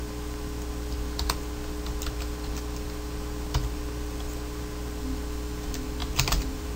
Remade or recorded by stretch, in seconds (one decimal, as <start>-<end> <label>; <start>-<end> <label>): 0.0-6.0 recorded; 6.0-6.8 remade